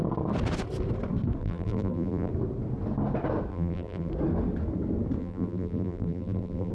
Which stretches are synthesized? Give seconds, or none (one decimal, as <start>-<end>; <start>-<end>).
1.4-2.3; 3.5-4.1; 5.2-6.7